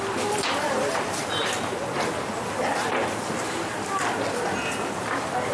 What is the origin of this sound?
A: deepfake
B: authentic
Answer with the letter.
B